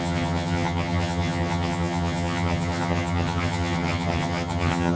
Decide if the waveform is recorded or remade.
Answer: remade